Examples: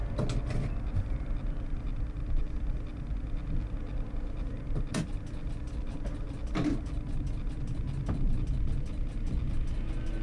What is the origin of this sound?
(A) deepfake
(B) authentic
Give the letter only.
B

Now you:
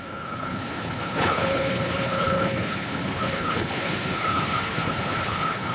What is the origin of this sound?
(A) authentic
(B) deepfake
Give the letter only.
B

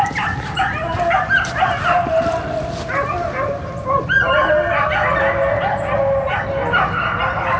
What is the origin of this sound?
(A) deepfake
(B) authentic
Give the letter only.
B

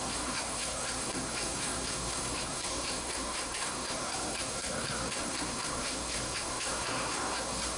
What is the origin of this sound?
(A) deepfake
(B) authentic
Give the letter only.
A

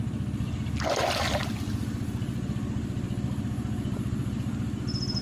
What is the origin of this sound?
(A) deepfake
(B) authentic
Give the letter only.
B